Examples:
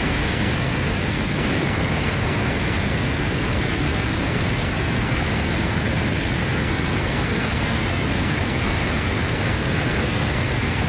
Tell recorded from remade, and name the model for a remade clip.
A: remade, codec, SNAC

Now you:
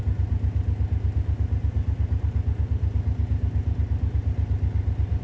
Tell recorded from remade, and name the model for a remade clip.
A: recorded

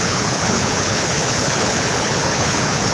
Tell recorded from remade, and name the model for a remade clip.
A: remade, codec, HILCodec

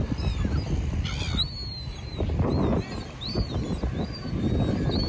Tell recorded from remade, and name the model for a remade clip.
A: recorded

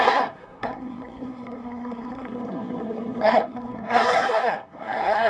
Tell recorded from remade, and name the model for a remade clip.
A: remade, codec, SNAC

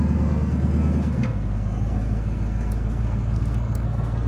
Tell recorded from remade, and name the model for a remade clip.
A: remade, codec, SNAC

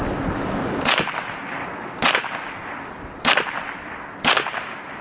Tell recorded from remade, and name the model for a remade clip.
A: recorded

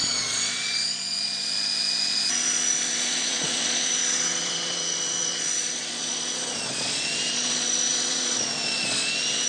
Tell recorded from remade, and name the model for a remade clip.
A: remade, vocoder, Vocos